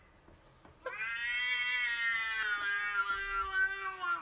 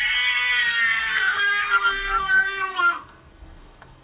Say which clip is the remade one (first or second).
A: second